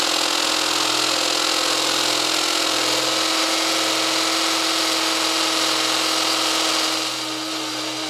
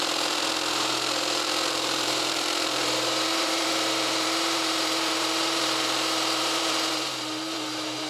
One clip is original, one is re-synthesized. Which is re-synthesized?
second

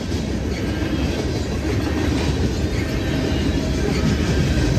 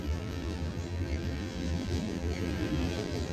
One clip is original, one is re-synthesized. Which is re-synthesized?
second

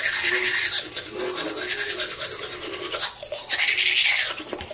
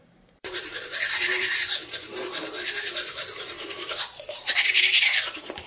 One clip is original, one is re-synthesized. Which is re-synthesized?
second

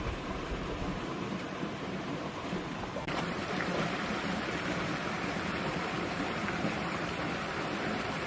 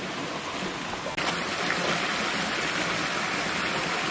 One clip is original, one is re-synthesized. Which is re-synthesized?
first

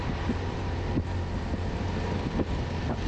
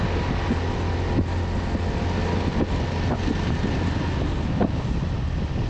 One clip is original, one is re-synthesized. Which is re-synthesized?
first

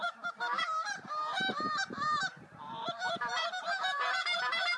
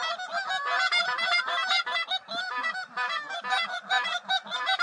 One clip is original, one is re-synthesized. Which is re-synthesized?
first